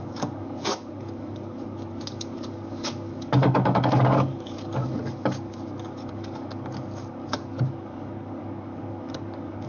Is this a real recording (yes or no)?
no